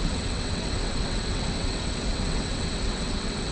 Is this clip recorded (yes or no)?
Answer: no